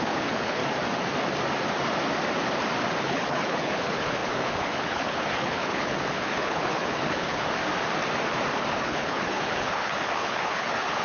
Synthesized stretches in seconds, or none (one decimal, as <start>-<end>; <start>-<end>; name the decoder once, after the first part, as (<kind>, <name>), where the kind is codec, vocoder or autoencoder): 0.0-0.6 (codec, HILCodec); 3.0-7.6; 8.7-11.0